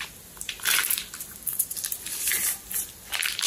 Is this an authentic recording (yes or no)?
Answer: no